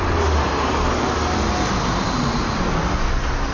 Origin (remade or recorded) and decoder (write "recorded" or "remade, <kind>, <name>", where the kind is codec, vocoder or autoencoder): recorded